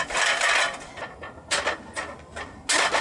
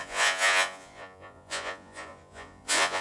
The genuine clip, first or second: first